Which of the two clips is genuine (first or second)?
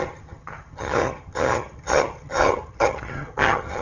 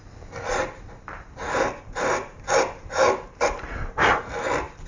second